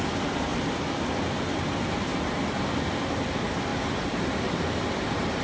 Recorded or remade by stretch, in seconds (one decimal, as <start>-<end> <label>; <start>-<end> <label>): 0.0-5.4 recorded